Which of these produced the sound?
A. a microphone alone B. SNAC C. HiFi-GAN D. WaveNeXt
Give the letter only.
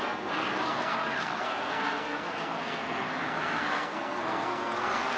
B